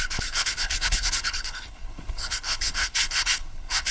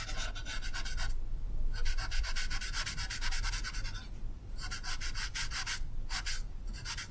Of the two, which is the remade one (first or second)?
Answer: first